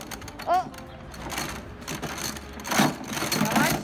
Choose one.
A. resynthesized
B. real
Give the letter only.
B